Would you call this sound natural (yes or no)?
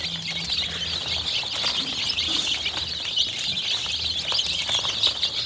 yes